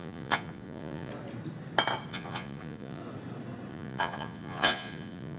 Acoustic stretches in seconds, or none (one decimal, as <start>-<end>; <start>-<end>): 1.1-2.1; 3.0-3.7